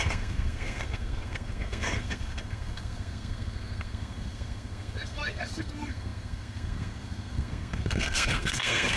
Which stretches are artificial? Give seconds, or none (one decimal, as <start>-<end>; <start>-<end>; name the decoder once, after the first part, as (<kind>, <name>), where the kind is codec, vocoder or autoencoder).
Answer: 0.0-9.0 (codec, SNAC)